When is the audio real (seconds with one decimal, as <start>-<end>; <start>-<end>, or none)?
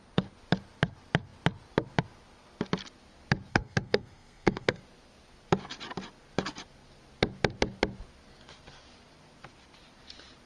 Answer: 0.0-3.5; 4.8-10.5